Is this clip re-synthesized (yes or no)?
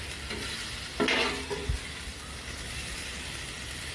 no